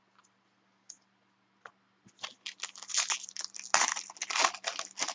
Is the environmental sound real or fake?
real